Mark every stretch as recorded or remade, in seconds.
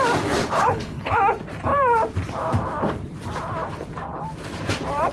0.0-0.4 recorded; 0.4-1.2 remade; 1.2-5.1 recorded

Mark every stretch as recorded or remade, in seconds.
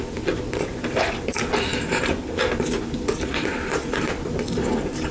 0.0-5.1 recorded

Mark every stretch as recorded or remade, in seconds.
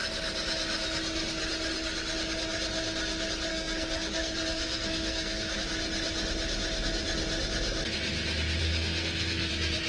0.0-3.5 recorded; 3.5-5.6 remade; 5.6-8.6 recorded; 8.6-9.5 remade; 9.5-9.9 recorded